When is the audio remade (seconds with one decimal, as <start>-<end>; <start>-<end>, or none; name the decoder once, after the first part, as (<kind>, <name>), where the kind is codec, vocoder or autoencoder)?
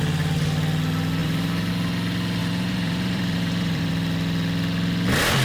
1.2-1.7 (vocoder, BigVGAN v2); 2.4-3.9